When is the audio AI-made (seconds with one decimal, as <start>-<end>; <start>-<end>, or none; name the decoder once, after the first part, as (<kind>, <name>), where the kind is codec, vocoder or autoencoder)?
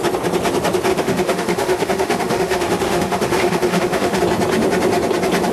0.9-4.2 (autoencoder, DAC-VAE)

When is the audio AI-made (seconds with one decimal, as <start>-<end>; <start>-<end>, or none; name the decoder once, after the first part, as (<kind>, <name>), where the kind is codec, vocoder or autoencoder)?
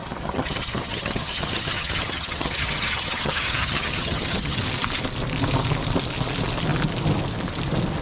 0.0-4.6 (vocoder, HiFi-GAN)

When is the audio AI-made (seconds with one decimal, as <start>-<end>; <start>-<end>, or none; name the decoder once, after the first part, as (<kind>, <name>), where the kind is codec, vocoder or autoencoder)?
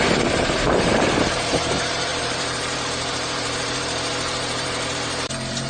0.0-5.7 (vocoder, BigVGAN v2)